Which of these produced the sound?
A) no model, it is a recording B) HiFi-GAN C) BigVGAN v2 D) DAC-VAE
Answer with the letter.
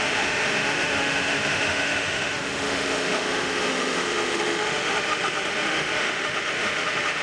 D